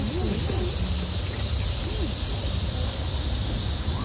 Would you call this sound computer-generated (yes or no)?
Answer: no